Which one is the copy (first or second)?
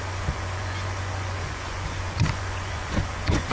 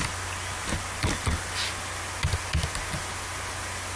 first